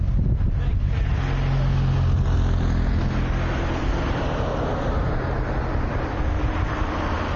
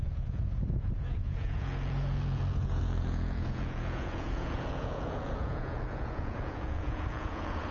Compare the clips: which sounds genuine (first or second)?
first